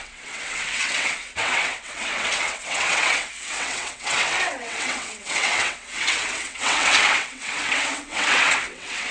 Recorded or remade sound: remade